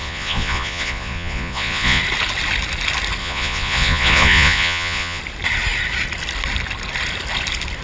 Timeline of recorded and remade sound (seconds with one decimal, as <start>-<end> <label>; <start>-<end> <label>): 0.0-2.0 remade; 2.0-3.2 recorded; 3.2-5.2 remade; 5.2-7.8 recorded